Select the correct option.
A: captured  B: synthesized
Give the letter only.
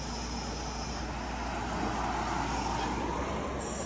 A